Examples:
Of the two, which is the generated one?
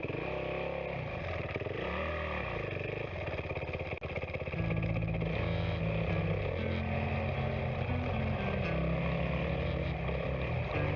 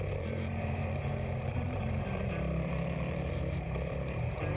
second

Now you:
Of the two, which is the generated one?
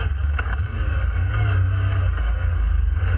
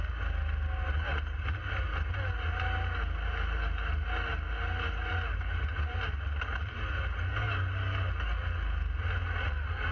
first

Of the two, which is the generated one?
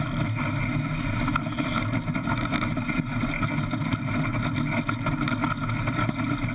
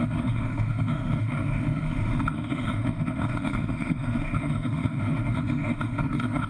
second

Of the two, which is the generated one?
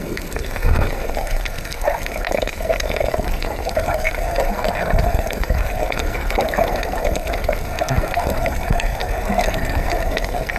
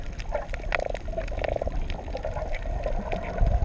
first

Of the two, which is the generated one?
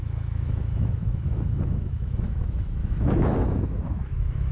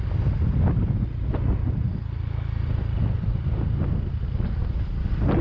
first